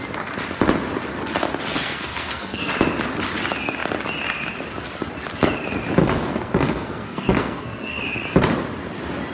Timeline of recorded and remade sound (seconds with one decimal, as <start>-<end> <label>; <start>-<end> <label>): 0.0-1.7 recorded; 1.7-2.7 remade; 2.7-6.0 recorded; 6.0-8.0 remade; 8.0-9.3 recorded